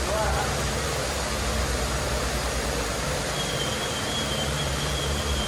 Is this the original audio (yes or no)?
no